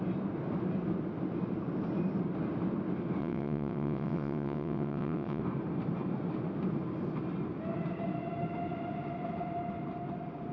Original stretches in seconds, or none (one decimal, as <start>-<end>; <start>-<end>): 0.0-3.2; 5.4-10.5